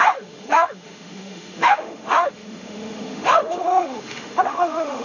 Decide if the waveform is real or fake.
fake